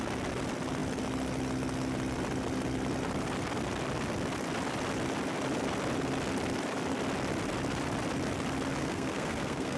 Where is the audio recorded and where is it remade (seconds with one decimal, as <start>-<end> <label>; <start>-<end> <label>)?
0.0-8.8 recorded; 8.8-9.8 remade

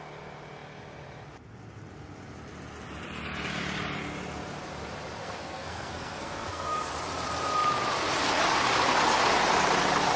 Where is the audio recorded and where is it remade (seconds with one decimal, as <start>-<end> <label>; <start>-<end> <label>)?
0.0-5.2 recorded; 5.2-6.9 remade; 6.9-10.2 recorded